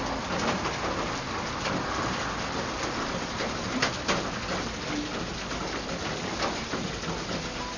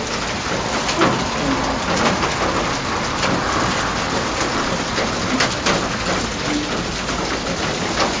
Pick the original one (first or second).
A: second